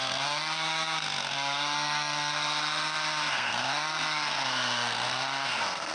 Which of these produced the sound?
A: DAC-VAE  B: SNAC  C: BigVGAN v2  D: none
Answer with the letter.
B